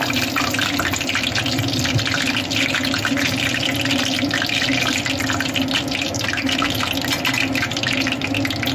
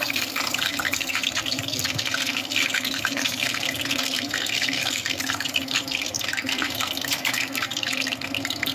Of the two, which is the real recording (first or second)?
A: first